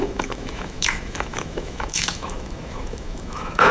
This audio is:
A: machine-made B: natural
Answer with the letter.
A